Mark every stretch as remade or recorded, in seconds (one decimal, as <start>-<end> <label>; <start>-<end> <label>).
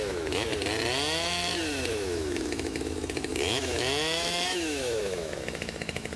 0.0-0.5 remade; 0.5-1.9 recorded; 1.9-6.2 remade